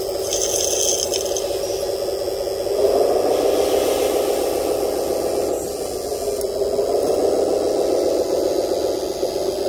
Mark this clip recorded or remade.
recorded